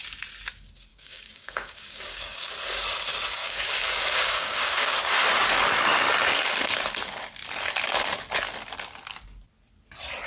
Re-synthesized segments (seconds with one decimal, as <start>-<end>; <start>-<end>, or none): 0.9-2.5; 3.4-5.0